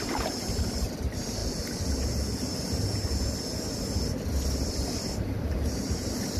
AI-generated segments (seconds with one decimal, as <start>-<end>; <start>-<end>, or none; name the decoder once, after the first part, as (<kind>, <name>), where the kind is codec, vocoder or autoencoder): 0.0-1.4 (vocoder, BigVGAN v2); 5.2-6.4